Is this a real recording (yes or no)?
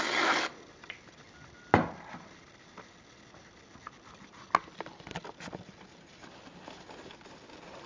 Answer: yes